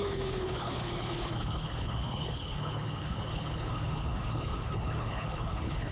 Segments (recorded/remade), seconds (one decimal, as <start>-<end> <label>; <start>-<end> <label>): 0.0-5.9 remade